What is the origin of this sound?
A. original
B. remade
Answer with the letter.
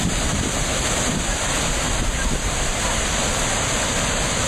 B